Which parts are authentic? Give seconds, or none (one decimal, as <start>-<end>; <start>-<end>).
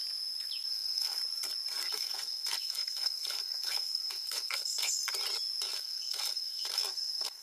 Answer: 0.0-0.7; 1.2-1.9; 5.0-5.7